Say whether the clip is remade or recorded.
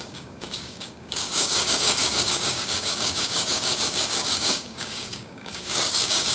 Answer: remade